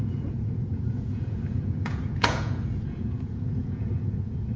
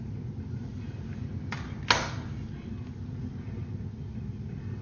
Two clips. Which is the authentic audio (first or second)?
second